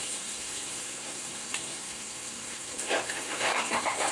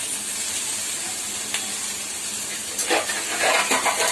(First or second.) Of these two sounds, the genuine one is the second